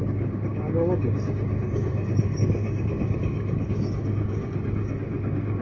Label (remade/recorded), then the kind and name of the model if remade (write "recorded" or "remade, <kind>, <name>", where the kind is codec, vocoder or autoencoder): remade, codec, DAC